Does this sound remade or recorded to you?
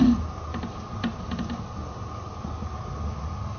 recorded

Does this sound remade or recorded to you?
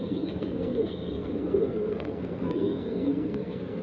remade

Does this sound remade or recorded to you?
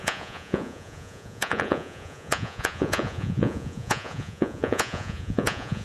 remade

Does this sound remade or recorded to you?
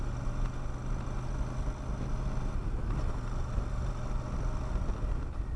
recorded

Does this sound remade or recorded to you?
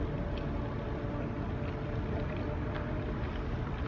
recorded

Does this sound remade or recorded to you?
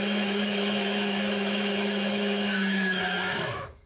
remade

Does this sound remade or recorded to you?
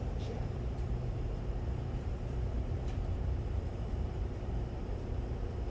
remade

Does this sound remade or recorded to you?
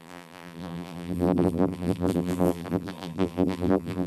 remade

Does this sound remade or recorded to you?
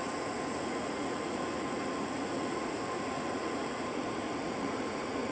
remade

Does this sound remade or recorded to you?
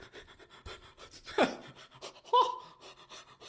recorded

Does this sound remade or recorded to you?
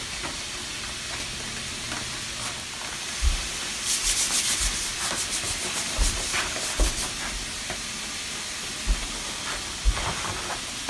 recorded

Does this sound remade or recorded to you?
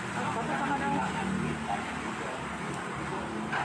recorded